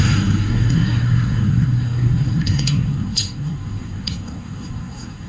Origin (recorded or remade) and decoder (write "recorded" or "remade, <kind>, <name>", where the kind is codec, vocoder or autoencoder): remade, codec, SNAC